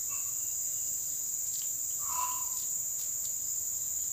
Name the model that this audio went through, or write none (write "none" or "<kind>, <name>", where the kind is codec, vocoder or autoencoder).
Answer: none